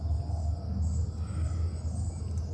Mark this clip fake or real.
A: real